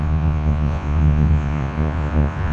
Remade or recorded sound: remade